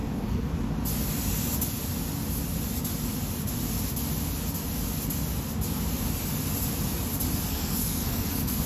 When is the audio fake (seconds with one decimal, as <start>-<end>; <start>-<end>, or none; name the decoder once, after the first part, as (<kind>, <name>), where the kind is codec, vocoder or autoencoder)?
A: 0.0-0.5 (codec, SNAC); 7.5-8.7